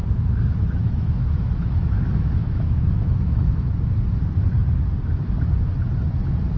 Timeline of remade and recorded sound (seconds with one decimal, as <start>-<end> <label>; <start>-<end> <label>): 0.0-4.0 remade; 4.0-6.6 recorded